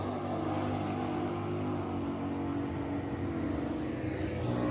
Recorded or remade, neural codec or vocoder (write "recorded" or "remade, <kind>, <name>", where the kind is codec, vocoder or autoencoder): recorded